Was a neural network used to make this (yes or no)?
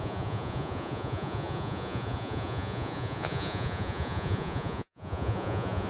yes